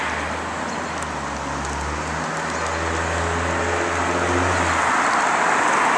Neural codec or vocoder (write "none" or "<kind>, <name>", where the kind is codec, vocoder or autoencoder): none